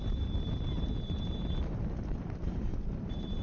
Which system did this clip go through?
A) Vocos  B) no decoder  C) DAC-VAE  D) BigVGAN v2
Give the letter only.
D